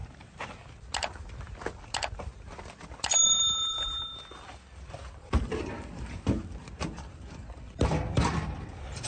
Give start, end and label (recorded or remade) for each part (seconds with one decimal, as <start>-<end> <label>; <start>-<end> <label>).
0.0-2.8 recorded; 2.8-9.1 remade